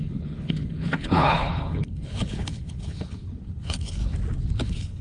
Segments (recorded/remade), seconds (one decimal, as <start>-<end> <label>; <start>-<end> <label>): 0.0-4.0 remade; 4.0-4.6 recorded; 4.6-5.0 remade